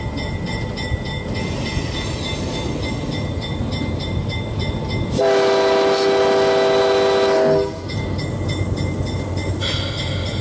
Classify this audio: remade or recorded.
recorded